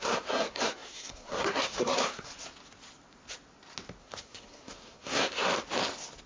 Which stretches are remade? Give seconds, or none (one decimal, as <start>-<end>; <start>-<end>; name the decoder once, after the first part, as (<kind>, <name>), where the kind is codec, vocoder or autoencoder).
0.0-2.3 (codec, SNAC); 4.0-5.5